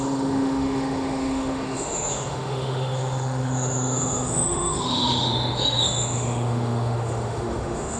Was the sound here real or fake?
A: fake